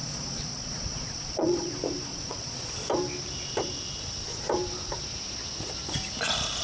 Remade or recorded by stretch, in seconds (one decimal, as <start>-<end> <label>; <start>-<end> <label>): 0.0-1.7 remade; 1.7-2.1 recorded; 2.1-2.7 remade; 2.7-6.6 recorded